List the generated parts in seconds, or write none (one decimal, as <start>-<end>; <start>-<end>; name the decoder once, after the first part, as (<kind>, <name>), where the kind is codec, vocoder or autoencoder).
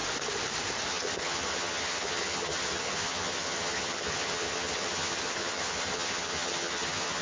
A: 0.9-7.2 (vocoder, HiFi-GAN)